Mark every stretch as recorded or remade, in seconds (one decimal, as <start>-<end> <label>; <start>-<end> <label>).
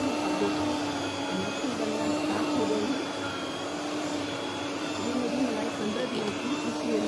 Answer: 0.0-2.1 recorded; 2.1-5.9 remade; 5.9-7.1 recorded